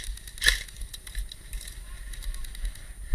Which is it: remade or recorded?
recorded